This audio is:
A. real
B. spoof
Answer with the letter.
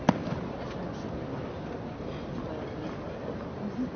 A